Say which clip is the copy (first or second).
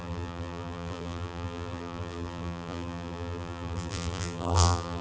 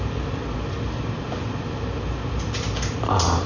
first